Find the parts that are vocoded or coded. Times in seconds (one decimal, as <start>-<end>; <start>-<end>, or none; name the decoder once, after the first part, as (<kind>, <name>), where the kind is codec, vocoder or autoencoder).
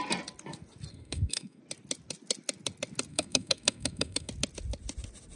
0.9-1.6 (codec, SNAC); 3.1-4.3